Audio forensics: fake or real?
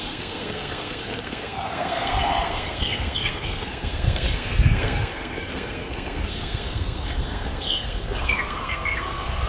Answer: fake